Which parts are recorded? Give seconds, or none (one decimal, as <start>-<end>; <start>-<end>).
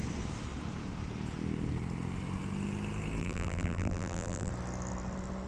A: 0.0-3.2; 4.5-5.5